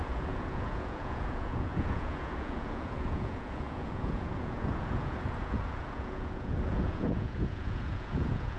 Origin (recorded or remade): remade